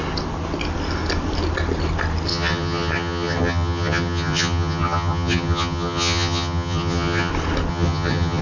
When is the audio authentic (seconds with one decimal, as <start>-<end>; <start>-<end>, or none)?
0.0-2.3; 7.3-7.7